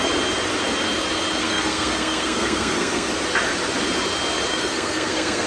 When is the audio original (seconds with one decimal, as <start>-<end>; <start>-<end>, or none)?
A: 0.0-1.4; 3.1-4.5